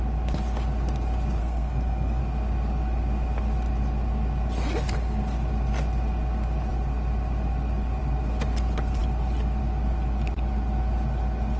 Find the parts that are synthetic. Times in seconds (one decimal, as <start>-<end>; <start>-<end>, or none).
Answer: 1.4-2.2